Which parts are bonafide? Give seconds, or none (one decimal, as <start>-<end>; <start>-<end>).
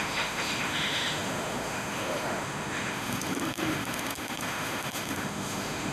none